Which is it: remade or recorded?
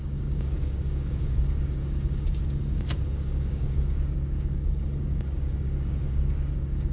remade